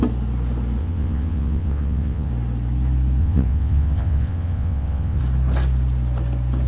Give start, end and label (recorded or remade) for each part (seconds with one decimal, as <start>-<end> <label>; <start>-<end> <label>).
0.0-0.8 recorded; 0.8-2.3 remade; 2.3-3.2 recorded; 3.2-5.2 remade; 5.2-6.7 recorded